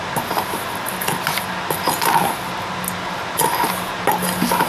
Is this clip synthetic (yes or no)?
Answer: no